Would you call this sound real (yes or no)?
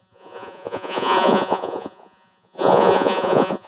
no